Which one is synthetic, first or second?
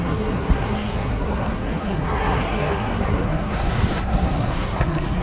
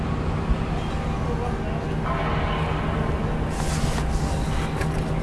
first